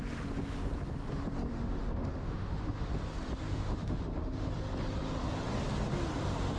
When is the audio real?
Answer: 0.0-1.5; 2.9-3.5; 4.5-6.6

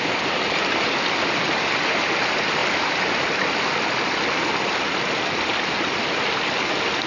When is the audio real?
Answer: 0.0-7.1

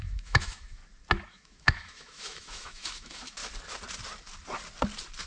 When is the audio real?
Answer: 0.8-1.3; 3.4-5.3

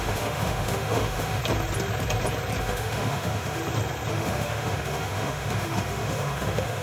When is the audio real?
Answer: 1.4-2.6; 3.6-4.1

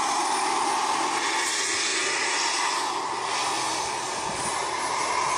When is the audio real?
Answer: 0.0-5.4

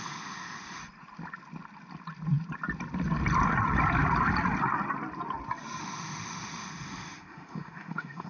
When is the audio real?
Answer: 0.8-5.8

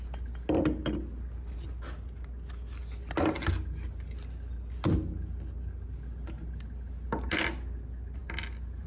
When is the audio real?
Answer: 0.0-8.9